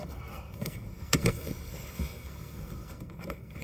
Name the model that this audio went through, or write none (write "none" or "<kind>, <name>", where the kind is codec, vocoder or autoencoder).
codec, SNAC